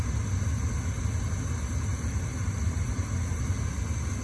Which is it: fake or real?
real